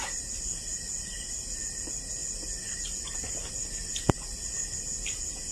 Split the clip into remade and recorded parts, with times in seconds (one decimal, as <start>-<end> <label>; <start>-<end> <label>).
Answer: 0.0-5.5 recorded